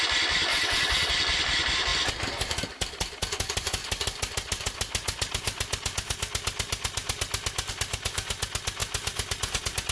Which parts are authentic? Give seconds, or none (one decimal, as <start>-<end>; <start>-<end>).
0.0-0.5; 1.1-9.9